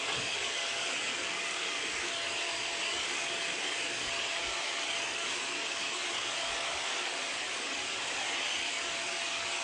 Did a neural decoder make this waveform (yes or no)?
yes